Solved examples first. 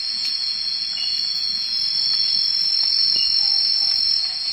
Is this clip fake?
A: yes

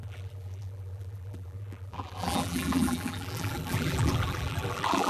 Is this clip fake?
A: yes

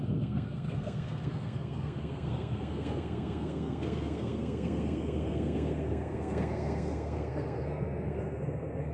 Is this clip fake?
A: yes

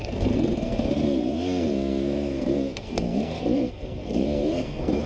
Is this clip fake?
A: yes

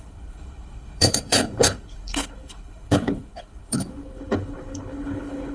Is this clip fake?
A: yes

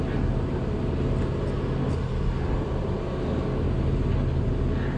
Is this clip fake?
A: no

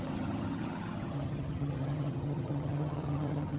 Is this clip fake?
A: yes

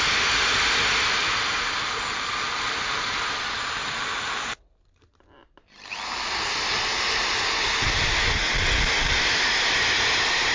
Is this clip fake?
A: no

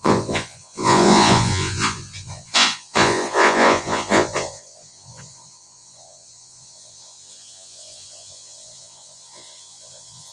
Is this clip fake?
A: yes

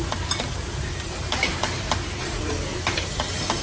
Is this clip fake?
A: yes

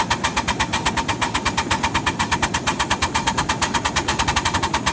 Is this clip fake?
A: no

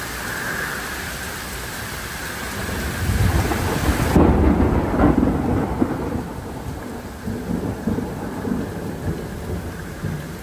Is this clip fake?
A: no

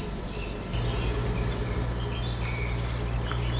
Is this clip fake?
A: no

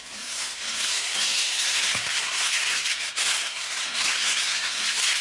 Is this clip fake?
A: yes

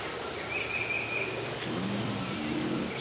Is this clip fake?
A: no